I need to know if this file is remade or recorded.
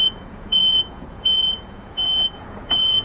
remade